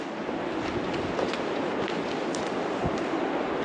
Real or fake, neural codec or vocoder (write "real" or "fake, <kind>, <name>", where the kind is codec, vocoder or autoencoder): real